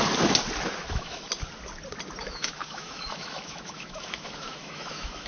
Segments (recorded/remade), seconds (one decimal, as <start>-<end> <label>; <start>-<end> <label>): 0.0-0.8 recorded; 0.8-1.3 remade; 1.3-2.2 recorded; 2.2-5.3 remade